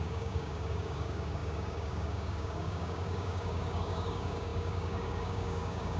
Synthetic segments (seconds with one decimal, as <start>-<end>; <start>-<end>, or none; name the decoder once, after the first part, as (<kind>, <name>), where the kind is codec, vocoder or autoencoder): 0.0-6.0 (codec, DAC)